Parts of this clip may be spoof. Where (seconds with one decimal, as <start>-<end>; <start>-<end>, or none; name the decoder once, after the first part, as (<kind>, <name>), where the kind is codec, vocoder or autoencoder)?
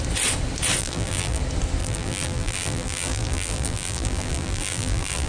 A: 0.8-1.4 (vocoder, BigVGAN v2); 1.8-5.3